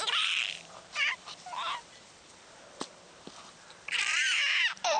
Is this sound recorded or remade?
remade